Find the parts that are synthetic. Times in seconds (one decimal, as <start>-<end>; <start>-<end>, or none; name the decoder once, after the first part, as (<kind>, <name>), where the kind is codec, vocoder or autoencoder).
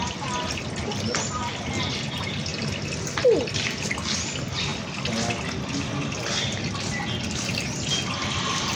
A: none